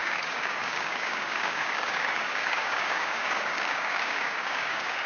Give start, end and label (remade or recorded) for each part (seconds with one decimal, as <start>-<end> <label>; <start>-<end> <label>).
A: 0.0-5.1 remade